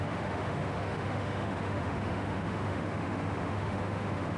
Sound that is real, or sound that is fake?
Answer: fake